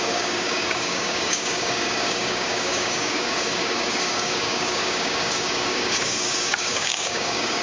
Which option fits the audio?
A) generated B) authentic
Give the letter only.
A